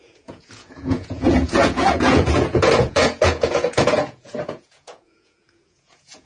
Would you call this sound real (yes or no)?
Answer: no